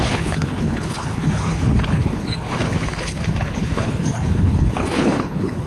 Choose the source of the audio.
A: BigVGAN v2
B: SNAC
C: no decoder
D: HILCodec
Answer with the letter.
D